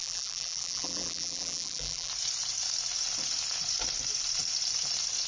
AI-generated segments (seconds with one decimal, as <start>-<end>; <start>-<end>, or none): 0.0-2.1